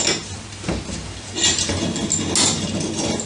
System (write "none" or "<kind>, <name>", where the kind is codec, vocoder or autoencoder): none